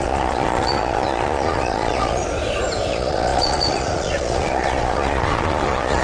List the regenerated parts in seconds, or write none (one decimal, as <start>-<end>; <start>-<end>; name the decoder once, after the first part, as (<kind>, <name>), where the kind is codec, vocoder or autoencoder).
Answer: 0.0-2.2 (vocoder, Vocos); 2.9-6.0